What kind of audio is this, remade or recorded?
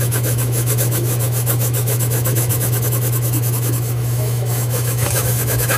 remade